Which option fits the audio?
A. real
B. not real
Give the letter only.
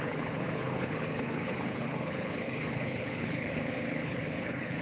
B